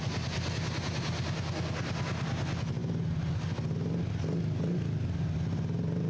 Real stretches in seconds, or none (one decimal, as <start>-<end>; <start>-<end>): 0.0-6.1